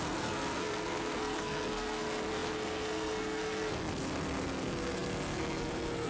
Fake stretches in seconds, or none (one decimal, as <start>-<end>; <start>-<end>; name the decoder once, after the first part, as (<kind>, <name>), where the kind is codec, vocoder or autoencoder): 0.0-6.1 (codec, SNAC)